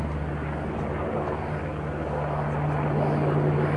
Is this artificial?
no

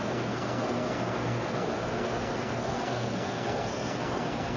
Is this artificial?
yes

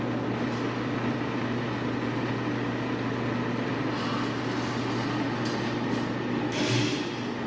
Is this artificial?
no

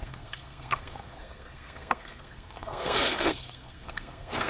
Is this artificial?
yes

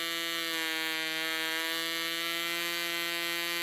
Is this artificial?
no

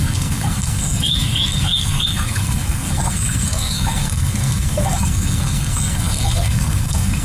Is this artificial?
yes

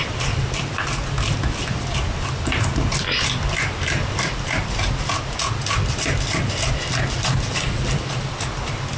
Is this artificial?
no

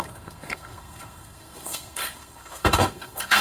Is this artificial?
yes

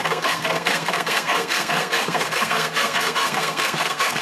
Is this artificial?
yes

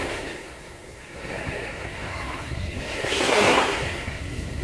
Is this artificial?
yes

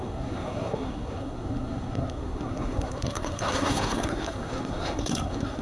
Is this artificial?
yes